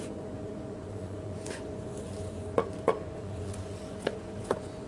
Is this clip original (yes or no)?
no